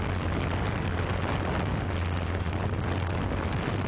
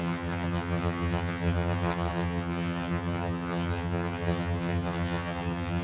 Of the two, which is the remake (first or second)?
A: second